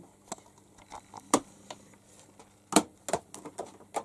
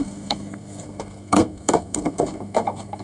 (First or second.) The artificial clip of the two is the second